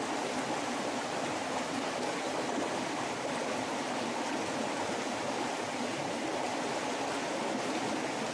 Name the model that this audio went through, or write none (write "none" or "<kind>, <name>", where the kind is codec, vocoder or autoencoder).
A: none